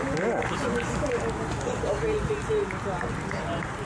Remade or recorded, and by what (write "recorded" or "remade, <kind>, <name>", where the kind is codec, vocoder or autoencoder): recorded